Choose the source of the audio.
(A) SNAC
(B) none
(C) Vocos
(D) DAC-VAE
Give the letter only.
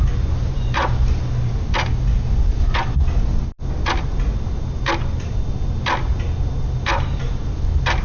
B